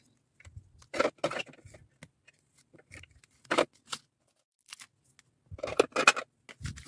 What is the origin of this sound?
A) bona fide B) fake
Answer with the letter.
A